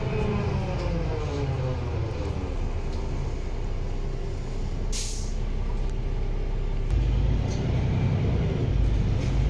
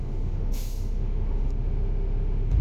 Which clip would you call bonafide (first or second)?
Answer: first